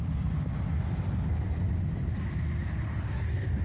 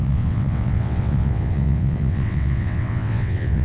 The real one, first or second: first